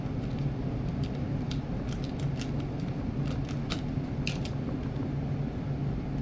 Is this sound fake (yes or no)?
no